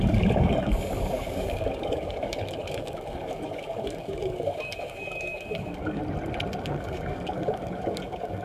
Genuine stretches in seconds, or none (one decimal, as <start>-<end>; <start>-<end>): 6.0-6.6